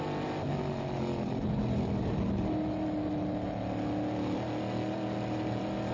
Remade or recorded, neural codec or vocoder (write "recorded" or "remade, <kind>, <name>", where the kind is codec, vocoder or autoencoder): recorded